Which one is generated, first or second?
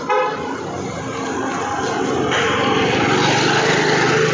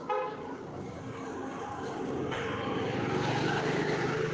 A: second